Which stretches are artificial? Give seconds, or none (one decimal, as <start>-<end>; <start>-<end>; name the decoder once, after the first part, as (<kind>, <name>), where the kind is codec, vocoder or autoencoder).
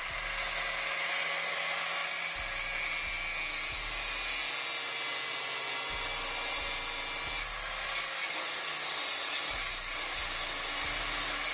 none